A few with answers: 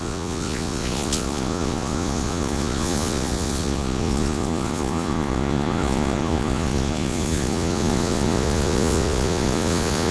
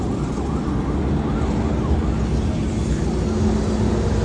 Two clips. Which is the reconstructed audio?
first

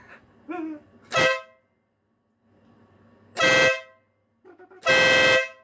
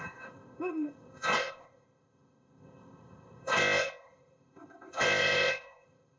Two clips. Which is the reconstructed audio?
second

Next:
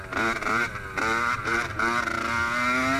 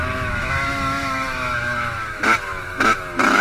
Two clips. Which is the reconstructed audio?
second